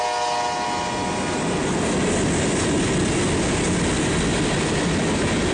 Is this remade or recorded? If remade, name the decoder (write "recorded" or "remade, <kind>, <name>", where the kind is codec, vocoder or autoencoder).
recorded